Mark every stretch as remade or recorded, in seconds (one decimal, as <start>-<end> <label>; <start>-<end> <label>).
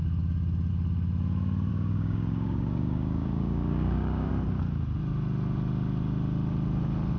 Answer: 0.0-1.7 recorded; 1.7-4.3 remade; 4.3-7.2 recorded